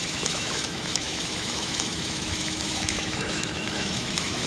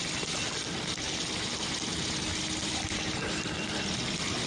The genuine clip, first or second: second